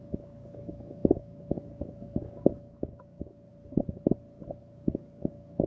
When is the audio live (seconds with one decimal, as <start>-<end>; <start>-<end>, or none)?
3.5-4.6